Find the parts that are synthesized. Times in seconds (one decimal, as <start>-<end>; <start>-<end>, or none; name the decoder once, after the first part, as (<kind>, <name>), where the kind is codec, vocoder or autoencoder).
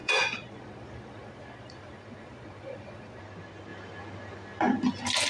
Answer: 0.0-3.2 (vocoder, Vocos)